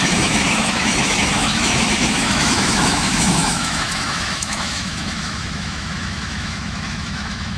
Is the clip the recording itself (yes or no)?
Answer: no